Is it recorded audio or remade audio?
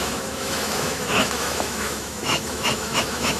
remade